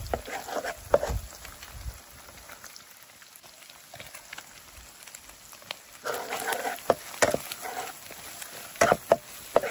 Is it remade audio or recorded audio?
recorded